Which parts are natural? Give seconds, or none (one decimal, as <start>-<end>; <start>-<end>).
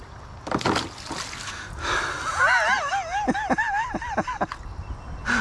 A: 0.0-2.3; 2.9-5.4